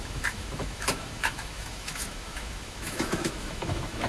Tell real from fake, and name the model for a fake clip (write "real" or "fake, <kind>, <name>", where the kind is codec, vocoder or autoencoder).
fake, autoencoder, DAC-VAE